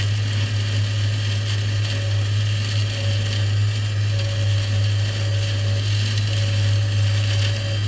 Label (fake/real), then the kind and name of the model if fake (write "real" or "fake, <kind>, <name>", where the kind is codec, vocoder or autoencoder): real